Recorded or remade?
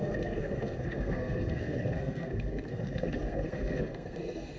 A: remade